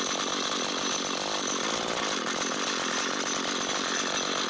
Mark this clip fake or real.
real